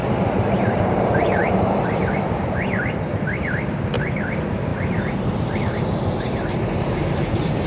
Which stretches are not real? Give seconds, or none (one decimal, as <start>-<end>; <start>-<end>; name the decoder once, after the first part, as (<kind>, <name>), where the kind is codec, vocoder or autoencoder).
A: 0.0-2.1 (vocoder, BigVGAN v2)

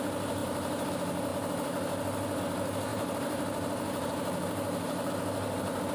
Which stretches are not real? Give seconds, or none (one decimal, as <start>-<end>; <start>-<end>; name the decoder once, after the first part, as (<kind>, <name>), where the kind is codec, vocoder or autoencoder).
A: 0.4-0.9 (vocoder, BigVGAN v2); 2.9-5.1

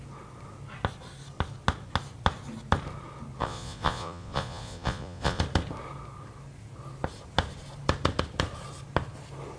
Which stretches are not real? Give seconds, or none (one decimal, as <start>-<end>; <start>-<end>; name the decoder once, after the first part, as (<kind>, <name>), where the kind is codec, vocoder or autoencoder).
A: 3.4-5.4 (vocoder, Vocos)

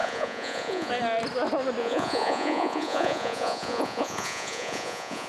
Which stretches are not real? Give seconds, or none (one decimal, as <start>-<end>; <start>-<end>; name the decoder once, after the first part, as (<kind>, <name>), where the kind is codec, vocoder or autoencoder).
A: 0.0-0.9 (vocoder, Vocos); 1.8-5.3